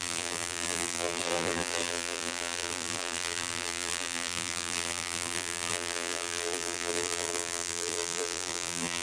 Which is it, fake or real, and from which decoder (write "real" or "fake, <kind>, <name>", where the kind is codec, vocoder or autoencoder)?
fake, vocoder, BigVGAN v2